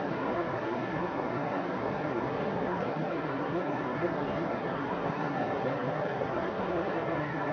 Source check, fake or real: fake